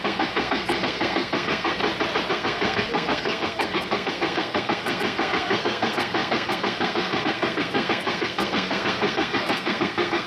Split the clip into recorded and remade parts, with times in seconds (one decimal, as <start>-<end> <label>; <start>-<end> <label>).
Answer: 0.0-1.8 remade; 1.8-2.3 recorded; 2.3-10.3 remade